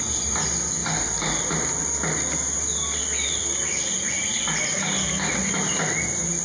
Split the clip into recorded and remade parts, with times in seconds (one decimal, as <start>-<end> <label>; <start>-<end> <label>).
0.0-6.4 recorded